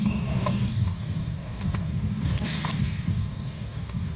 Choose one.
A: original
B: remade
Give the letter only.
B